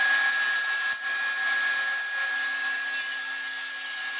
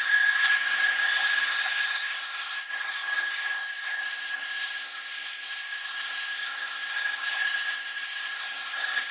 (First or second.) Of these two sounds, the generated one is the second